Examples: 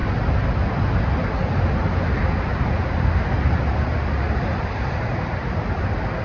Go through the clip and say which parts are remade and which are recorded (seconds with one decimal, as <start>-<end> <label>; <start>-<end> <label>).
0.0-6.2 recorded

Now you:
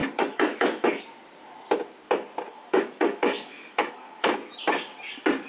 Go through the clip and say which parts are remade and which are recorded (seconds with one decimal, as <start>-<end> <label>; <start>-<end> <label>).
0.0-1.0 remade; 1.0-2.5 recorded; 2.5-4.3 remade; 4.3-5.5 recorded

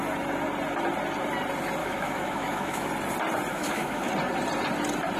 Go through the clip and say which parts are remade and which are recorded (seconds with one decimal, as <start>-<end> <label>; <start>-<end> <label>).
0.0-1.8 recorded; 1.8-2.9 remade; 2.9-3.5 recorded; 3.5-4.1 remade; 4.1-5.2 recorded

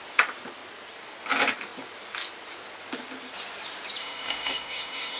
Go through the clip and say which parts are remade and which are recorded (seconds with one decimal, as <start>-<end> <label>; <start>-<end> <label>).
0.0-4.0 recorded; 4.0-5.2 remade

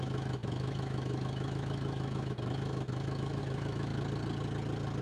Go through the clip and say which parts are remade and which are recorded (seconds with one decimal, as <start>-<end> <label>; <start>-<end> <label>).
0.0-3.9 remade; 3.9-5.0 recorded

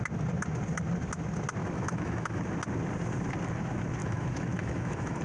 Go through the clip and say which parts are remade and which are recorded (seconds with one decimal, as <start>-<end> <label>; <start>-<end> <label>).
0.0-1.6 recorded; 1.6-2.4 remade; 2.4-4.0 recorded; 4.0-5.2 remade

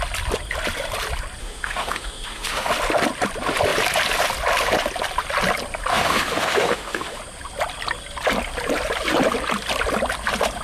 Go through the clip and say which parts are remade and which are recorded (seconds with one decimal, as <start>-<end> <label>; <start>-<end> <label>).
0.0-1.4 recorded; 1.4-2.7 remade; 2.7-5.9 recorded; 5.9-7.2 remade; 7.2-10.6 recorded

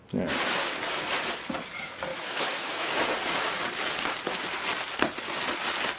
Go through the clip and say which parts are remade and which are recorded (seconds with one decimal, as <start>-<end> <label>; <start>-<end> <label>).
0.0-2.1 recorded; 2.1-2.9 remade; 2.9-6.0 recorded